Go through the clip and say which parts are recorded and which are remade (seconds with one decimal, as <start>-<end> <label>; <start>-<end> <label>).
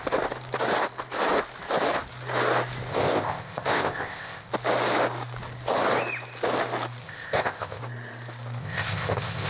0.0-2.9 recorded; 2.9-4.5 remade; 4.5-7.0 recorded; 7.0-7.8 remade; 7.8-8.6 recorded; 8.6-9.5 remade